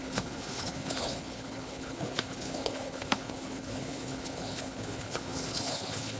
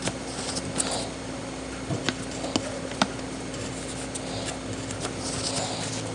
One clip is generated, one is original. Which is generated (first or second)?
first